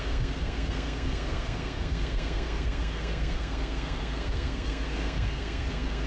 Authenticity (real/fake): fake